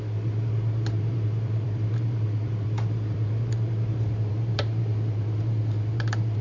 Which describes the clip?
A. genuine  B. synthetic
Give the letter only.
B